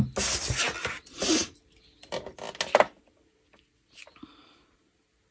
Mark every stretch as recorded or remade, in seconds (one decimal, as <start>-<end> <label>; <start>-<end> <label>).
0.0-5.3 recorded